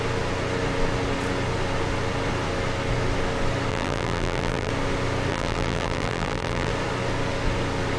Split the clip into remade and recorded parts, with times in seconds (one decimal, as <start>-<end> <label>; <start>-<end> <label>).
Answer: 0.0-3.7 recorded; 3.7-4.7 remade; 4.7-5.3 recorded; 5.3-6.7 remade; 6.7-8.0 recorded